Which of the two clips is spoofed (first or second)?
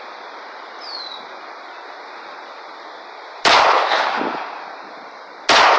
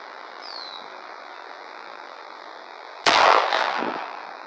second